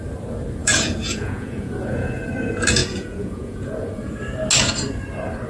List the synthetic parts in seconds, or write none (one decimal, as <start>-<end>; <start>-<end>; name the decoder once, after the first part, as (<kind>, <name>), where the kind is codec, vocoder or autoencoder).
0.6-2.3 (vocoder, Vocos); 2.8-4.2